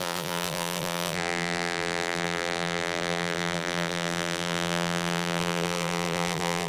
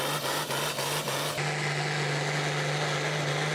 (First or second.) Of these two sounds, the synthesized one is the first